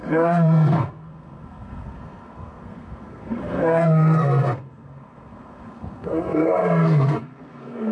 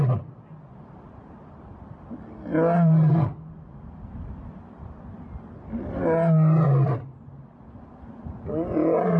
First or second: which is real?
second